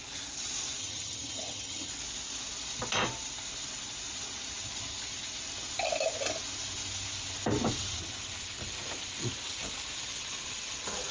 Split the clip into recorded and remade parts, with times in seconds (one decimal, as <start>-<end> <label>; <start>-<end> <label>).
0.0-0.8 recorded; 0.8-1.9 remade; 1.9-11.1 recorded